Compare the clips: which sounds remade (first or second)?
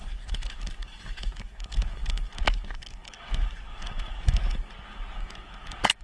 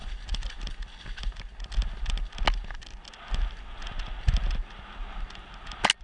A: first